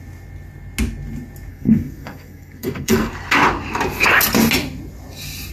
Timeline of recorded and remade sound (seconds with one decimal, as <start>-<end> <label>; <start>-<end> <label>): 0.0-1.5 recorded; 1.5-3.1 remade; 3.1-5.5 recorded